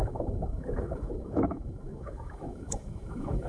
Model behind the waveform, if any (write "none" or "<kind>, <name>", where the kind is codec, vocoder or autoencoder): autoencoder, DAC-VAE